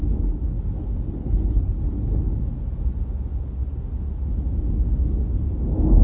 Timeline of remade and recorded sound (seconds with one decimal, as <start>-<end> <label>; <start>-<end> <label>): 0.0-1.2 recorded; 1.2-2.2 remade; 2.2-6.0 recorded